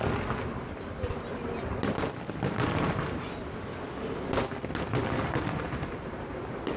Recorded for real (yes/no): yes